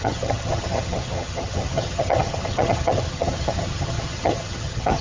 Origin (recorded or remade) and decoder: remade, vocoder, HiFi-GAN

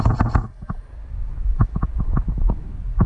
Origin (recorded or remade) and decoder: recorded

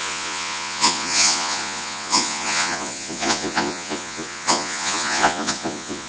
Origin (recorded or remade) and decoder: remade, vocoder, Vocos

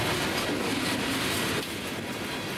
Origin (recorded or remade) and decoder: recorded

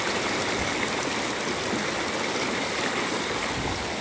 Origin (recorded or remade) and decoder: recorded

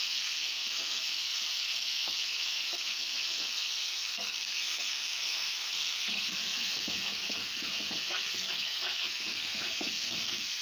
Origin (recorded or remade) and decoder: remade, codec, SNAC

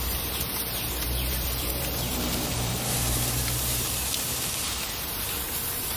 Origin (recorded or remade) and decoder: remade, vocoder, BigVGAN v2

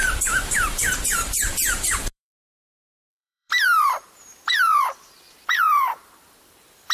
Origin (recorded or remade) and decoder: remade, vocoder, BigVGAN v2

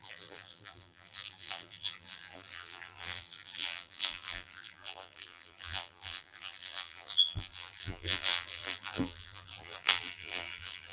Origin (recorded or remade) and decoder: remade, vocoder, BigVGAN v2